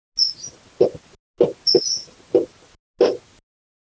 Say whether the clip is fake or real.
real